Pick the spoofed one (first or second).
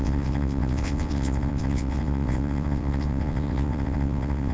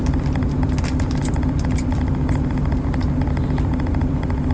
first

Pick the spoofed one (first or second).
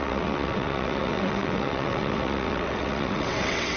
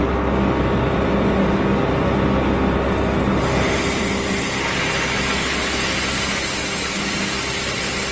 first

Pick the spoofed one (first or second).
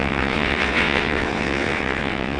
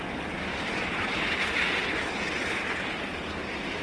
first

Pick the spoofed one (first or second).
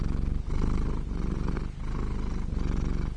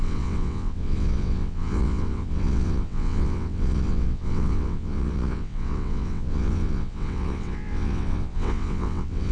second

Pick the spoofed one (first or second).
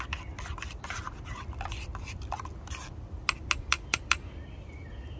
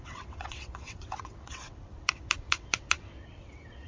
second